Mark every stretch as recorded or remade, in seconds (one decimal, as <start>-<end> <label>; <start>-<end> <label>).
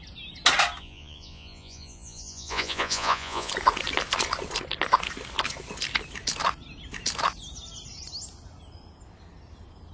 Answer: 0.0-0.8 recorded; 0.8-3.5 remade; 3.5-9.9 recorded